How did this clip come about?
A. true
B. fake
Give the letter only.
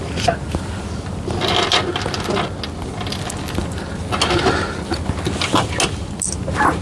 A